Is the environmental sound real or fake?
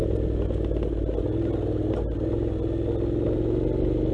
real